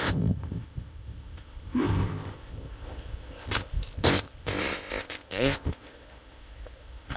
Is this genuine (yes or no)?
no